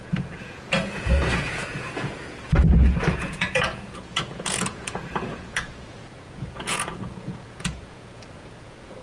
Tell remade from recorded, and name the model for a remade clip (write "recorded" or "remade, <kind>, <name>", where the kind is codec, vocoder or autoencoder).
remade, vocoder, Vocos